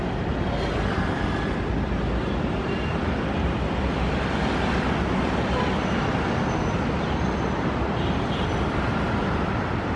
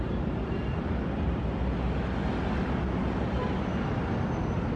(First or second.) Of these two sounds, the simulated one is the first